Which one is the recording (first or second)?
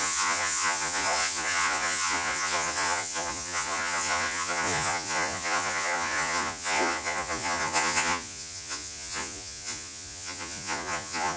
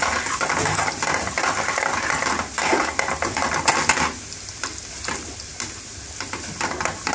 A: second